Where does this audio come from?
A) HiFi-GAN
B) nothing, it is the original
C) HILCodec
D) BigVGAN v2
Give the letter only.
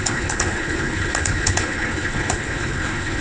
C